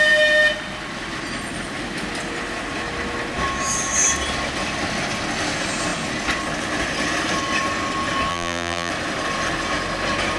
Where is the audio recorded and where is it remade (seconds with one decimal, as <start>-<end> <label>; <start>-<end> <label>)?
0.0-8.3 recorded; 8.3-8.9 remade; 8.9-10.4 recorded